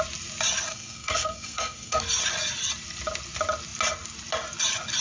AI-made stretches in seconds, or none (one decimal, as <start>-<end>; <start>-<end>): 0.7-2.0